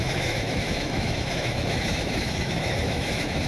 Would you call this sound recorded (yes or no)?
no